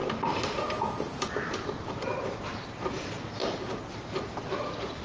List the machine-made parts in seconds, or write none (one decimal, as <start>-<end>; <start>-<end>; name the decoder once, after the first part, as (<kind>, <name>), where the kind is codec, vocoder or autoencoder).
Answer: 0.0-3.0 (vocoder, BigVGAN v2); 3.4-4.6